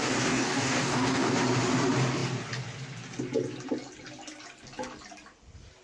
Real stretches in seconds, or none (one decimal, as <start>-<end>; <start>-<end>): 1.3-5.8